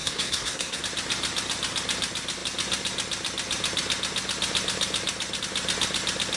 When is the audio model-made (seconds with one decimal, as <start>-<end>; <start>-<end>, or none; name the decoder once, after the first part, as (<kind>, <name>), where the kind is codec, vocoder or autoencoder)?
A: 0.0-0.8 (codec, SNAC)